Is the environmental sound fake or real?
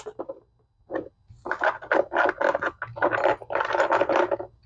real